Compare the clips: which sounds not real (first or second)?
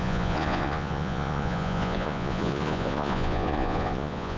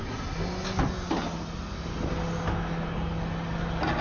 first